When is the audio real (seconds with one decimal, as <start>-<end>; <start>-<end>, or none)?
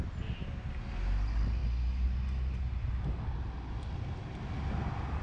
0.0-5.2